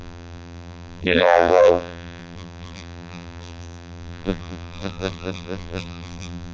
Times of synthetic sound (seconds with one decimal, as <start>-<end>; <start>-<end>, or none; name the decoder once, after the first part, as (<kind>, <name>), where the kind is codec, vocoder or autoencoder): 0.0-6.5 (vocoder, BigVGAN v2)